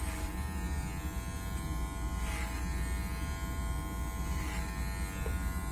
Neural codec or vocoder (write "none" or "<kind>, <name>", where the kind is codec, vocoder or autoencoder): none